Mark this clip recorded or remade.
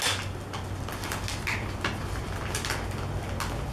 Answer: recorded